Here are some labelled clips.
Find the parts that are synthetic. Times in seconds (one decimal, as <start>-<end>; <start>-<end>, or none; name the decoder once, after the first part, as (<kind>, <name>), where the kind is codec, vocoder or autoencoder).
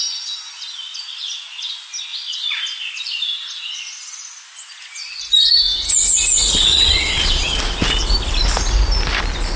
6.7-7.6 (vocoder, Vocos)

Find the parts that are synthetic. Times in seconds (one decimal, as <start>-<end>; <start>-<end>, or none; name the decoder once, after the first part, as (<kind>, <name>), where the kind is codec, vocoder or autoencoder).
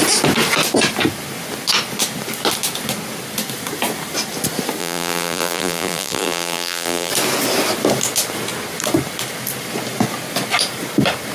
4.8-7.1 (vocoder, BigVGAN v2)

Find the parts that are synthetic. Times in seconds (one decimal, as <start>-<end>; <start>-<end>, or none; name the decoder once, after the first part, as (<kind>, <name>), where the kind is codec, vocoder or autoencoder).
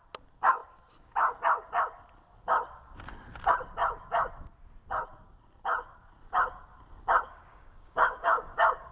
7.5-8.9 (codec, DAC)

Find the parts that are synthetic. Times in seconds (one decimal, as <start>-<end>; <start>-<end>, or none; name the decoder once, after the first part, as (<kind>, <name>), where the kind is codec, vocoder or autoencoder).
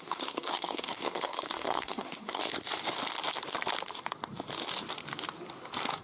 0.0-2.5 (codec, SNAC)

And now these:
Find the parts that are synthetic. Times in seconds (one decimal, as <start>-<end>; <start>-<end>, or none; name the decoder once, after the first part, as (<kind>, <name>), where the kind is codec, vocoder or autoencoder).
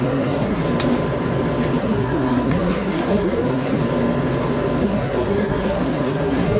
0.0-0.6 (codec, SNAC); 1.8-3.8; 4.8-6.6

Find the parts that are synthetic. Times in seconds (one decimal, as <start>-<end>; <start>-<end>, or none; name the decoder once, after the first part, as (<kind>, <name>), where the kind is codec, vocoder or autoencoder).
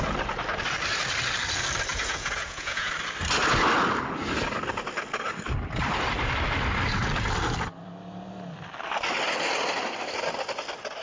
1.9-2.9 (vocoder, Vocos)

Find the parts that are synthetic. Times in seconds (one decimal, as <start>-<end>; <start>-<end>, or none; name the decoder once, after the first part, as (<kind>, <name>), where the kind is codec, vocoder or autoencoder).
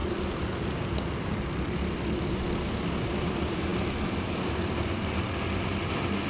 none